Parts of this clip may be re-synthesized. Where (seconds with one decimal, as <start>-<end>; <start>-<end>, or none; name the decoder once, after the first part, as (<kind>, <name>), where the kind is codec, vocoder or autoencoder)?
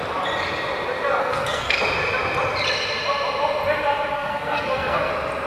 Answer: 1.2-1.8 (codec, SNAC); 4.1-5.1